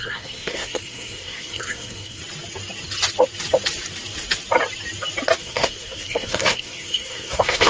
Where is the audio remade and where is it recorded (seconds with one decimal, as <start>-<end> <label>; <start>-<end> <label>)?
0.0-2.2 remade; 2.2-5.4 recorded; 5.4-7.7 remade